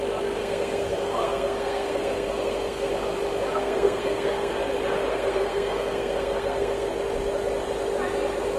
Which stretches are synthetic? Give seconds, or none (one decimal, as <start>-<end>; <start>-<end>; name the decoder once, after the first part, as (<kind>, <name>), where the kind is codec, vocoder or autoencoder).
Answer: 0.4-2.9 (codec, SNAC); 3.5-4.5; 5.1-6.9